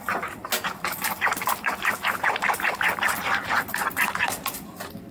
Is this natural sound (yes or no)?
yes